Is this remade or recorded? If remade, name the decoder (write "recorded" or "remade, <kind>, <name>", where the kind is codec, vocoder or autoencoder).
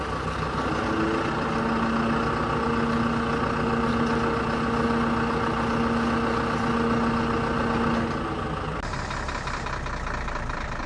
recorded